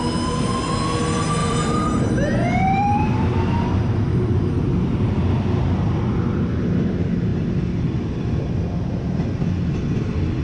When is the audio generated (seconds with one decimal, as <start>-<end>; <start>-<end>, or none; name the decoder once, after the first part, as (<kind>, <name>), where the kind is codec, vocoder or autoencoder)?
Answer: 1.4-6.4 (vocoder, BigVGAN v2)